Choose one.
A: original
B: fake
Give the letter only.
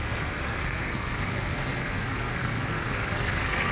B